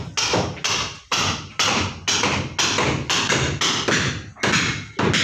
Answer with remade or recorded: recorded